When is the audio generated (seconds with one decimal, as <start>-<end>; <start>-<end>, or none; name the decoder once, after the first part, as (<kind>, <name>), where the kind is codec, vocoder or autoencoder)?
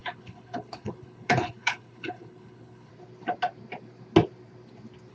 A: 0.0-2.9 (codec, HILCodec)